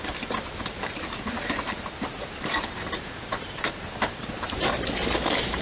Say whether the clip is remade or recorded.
remade